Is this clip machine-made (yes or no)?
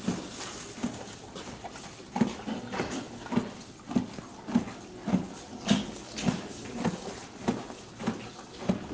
no